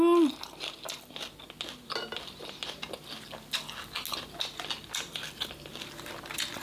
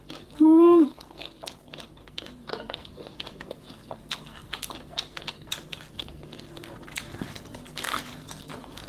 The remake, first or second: second